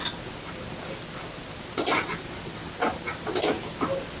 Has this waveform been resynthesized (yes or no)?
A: no